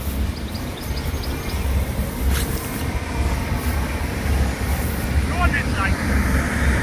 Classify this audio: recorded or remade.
recorded